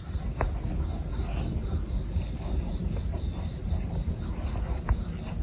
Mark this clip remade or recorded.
recorded